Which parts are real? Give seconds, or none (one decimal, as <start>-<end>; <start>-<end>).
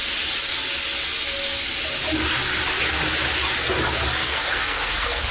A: 0.0-4.2